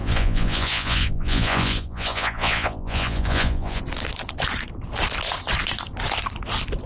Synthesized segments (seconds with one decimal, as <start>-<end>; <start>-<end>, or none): 0.0-3.8